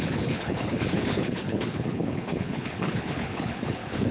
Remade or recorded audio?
remade